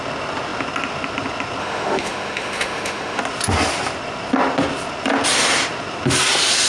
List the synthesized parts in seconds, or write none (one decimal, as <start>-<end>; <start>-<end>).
1.6-3.2